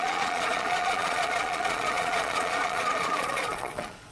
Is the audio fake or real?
fake